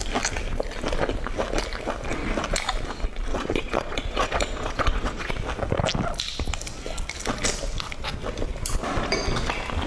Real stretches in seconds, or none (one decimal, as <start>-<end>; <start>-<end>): 0.0-3.3; 5.3-9.9